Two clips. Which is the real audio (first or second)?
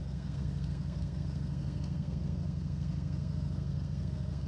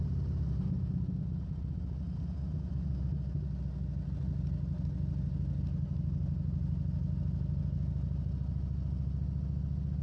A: second